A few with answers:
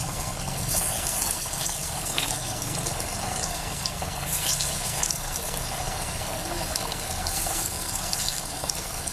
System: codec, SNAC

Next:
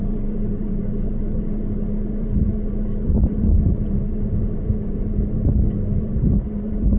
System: vocoder, BigVGAN v2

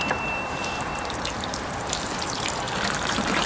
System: vocoder, BigVGAN v2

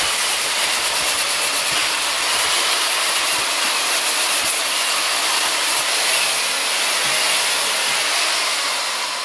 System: none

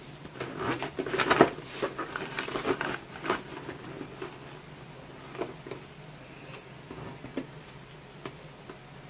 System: none